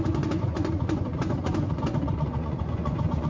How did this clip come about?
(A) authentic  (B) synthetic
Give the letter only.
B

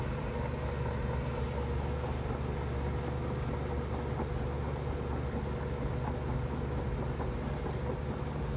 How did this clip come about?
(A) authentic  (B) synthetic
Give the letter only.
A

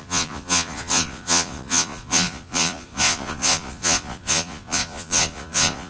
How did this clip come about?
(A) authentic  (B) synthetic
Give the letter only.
B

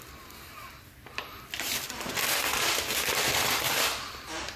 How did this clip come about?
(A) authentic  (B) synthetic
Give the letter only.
A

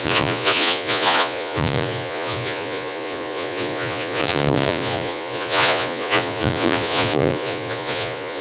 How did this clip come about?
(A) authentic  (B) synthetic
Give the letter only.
B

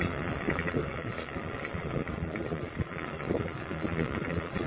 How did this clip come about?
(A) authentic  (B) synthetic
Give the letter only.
B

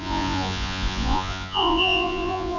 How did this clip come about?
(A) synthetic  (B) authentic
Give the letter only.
A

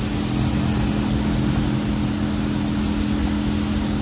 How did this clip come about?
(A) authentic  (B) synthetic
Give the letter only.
A